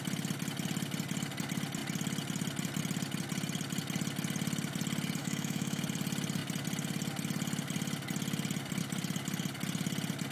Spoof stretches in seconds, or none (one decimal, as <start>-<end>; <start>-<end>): 5.2-5.8